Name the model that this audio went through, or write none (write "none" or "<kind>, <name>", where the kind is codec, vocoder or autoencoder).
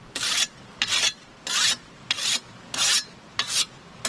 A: none